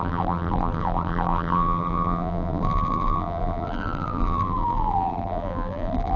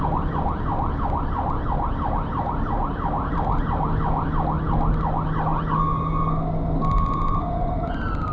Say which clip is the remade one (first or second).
first